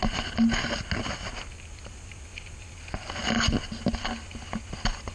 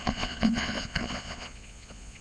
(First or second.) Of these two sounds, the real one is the first